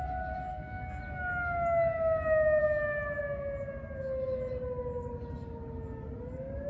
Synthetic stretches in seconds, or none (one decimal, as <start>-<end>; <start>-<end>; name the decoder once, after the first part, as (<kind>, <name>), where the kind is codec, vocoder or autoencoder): 0.5-1.0 (codec, SNAC)